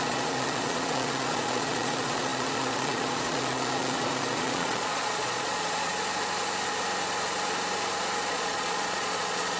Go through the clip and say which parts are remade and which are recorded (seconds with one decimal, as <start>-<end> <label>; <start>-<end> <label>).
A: 0.0-5.9 remade; 5.9-8.3 recorded; 8.3-9.6 remade